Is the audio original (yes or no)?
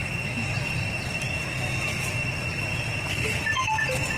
yes